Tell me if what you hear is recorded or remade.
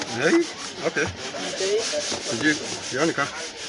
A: remade